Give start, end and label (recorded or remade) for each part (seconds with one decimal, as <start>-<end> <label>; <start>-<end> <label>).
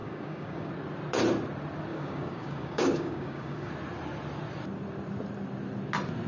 0.0-0.7 remade; 0.7-1.9 recorded; 1.9-3.7 remade; 3.7-6.3 recorded